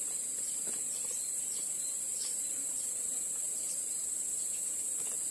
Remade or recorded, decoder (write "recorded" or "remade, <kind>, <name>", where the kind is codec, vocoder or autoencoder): remade, vocoder, BigVGAN v2